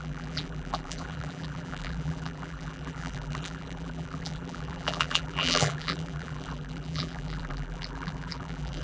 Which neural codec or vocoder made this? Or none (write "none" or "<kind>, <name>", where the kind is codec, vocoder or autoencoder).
vocoder, BigVGAN v2